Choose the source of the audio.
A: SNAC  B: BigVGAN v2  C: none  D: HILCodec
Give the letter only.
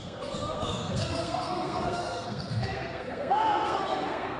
A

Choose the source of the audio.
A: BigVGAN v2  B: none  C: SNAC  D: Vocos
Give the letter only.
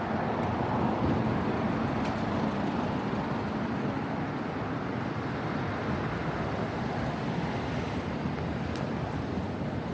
B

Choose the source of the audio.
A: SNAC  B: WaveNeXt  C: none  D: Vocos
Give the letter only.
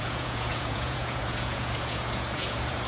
D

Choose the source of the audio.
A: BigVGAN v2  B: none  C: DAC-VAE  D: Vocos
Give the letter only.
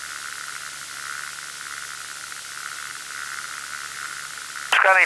B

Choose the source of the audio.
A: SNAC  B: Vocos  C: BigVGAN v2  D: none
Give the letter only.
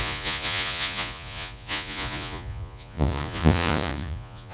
B